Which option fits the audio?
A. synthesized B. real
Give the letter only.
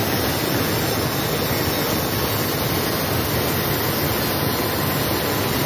B